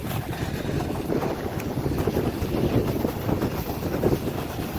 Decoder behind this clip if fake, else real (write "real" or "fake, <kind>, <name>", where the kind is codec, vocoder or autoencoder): real